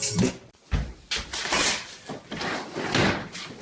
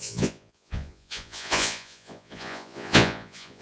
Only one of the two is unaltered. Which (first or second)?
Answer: first